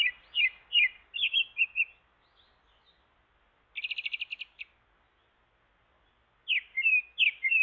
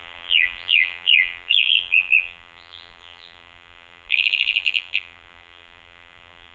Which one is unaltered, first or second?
first